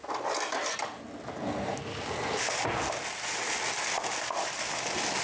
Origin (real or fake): real